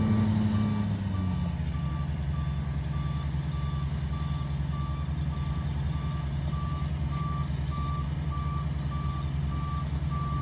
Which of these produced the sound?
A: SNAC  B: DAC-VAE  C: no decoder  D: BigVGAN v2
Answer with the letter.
C